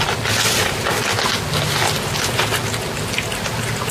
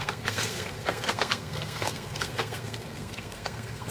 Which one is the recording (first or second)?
first